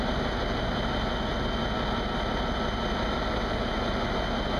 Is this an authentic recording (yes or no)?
yes